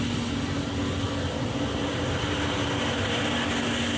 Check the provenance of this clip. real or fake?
real